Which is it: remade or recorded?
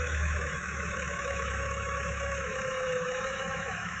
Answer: remade